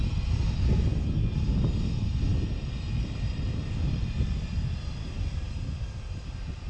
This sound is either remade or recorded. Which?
recorded